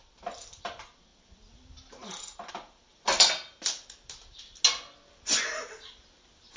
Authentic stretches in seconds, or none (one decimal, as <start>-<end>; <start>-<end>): 0.0-6.6